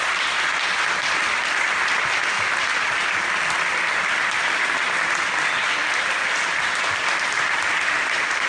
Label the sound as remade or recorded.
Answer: recorded